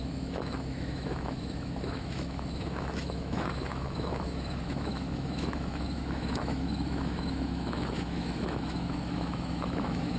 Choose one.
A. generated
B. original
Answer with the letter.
A